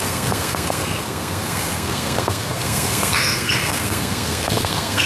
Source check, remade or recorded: remade